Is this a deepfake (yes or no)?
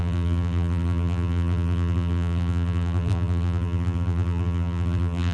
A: yes